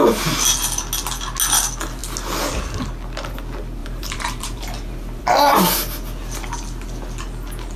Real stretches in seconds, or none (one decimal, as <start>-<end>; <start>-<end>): 0.0-3.8; 5.6-7.8